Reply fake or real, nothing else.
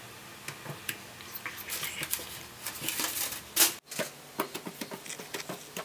real